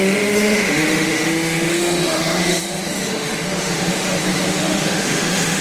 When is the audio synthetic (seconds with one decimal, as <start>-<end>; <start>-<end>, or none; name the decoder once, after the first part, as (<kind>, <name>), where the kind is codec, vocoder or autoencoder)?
0.0-5.6 (autoencoder, DAC-VAE)